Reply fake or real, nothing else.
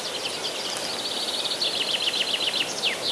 real